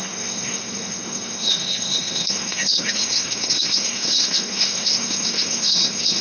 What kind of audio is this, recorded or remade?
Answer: remade